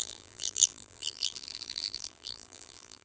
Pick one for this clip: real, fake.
fake